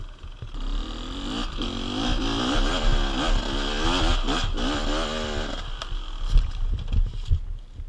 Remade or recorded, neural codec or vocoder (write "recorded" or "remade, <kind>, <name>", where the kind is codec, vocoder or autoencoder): recorded